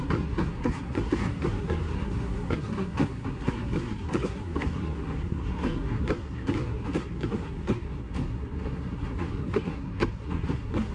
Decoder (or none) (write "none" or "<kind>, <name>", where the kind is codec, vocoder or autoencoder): codec, SNAC